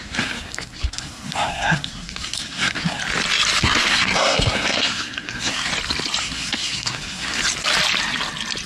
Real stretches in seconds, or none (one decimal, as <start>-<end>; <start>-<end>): 3.0-3.6; 5.7-6.2; 7.4-8.7